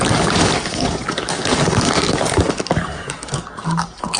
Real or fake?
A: fake